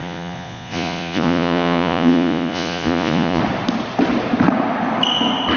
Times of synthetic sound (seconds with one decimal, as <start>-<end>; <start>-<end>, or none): 0.0-3.4